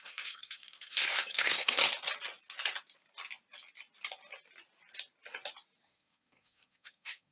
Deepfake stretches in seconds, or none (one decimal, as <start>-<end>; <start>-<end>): 0.0-1.8; 5.8-7.3